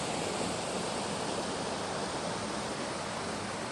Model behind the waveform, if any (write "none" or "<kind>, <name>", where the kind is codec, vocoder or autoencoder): none